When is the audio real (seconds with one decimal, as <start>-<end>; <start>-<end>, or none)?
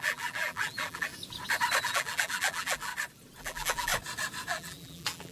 1.1-1.8; 2.9-3.4; 3.9-4.5